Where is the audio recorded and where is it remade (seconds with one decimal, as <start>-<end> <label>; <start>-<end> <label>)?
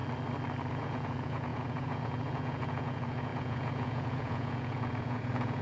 0.0-0.7 recorded; 0.7-5.6 remade